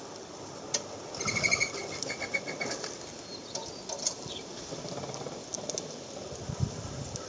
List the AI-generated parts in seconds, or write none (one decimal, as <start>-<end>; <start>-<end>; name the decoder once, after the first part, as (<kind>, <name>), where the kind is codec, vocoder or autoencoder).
none

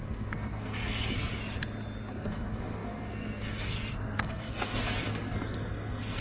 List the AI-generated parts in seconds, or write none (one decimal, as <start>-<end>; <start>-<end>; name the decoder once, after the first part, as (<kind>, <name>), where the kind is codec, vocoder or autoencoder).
0.0-1.3 (codec, SNAC); 2.2-6.2